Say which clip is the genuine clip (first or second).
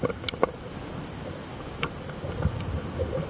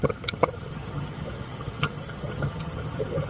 first